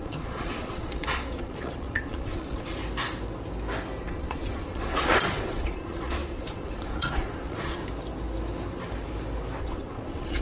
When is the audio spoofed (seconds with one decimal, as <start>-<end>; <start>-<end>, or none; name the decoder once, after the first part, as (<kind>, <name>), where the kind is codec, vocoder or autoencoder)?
0.0-2.8 (vocoder, Vocos); 4.0-7.8; 9.6-10.4